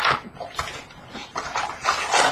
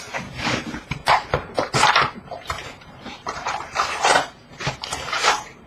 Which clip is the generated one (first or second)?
second